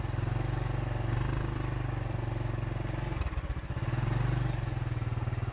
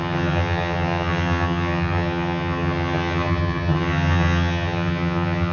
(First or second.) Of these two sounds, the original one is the first